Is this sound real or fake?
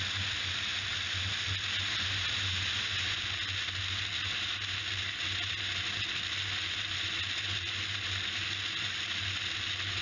real